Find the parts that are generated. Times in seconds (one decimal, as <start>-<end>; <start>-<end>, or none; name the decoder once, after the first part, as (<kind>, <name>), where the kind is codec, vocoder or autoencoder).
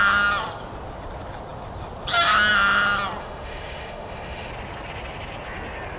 3.2-4.5 (autoencoder, DAC-VAE)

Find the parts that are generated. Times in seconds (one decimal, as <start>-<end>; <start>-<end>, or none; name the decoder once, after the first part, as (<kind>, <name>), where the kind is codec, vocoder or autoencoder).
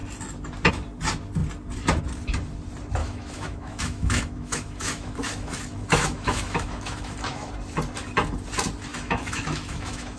3.0-7.5 (autoencoder, DAC-VAE); 8.9-10.2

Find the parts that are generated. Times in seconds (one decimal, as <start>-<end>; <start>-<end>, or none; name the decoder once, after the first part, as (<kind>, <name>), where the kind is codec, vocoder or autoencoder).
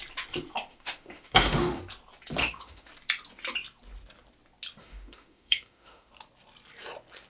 0.7-1.8 (autoencoder, DAC-VAE); 2.4-2.9; 4.8-6.1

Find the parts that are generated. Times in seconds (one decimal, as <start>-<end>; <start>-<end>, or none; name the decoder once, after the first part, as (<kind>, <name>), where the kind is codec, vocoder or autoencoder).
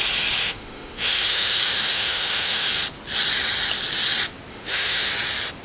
0.4-2.7 (autoencoder, DAC-VAE); 4.5-5.1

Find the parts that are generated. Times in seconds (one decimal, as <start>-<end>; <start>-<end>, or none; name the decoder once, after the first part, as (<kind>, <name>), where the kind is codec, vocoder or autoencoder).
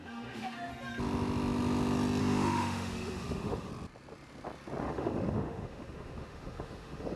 0.0-0.7 (autoencoder, DAC-VAE); 2.2-3.7; 4.8-7.2